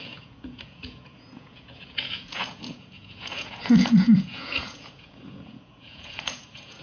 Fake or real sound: fake